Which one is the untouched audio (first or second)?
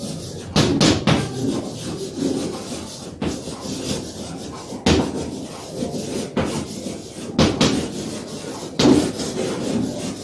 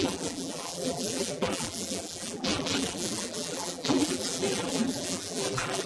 first